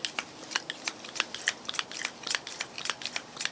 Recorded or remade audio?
recorded